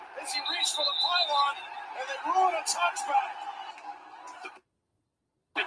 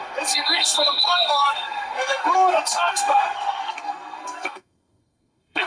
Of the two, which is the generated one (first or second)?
second